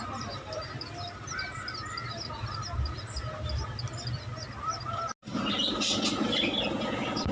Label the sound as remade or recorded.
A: recorded